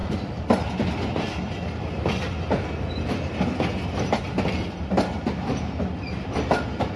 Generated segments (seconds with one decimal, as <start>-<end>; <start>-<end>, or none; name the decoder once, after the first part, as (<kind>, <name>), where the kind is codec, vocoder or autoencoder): none